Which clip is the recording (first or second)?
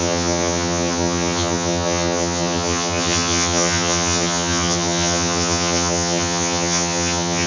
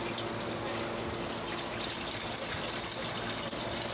second